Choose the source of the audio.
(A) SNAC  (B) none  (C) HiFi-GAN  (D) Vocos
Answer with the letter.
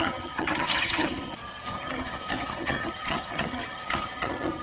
C